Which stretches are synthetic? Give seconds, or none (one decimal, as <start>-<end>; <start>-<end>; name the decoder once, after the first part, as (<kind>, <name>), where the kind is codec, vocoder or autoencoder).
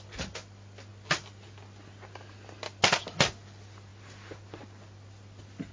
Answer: none